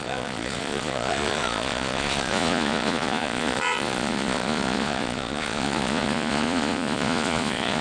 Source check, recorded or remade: remade